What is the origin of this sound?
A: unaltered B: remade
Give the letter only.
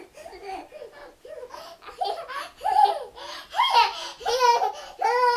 A